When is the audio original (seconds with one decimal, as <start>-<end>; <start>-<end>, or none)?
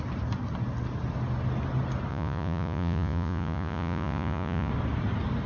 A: 0.0-2.1; 4.7-5.5